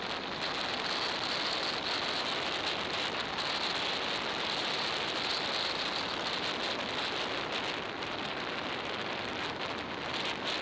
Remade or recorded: recorded